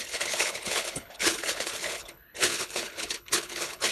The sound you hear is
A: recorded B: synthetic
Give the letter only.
B